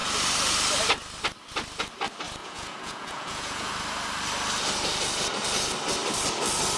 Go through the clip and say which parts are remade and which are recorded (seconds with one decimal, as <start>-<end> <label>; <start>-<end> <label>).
0.0-2.4 recorded; 2.4-3.7 remade; 3.7-6.8 recorded